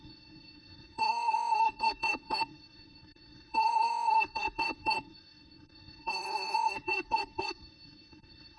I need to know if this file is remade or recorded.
remade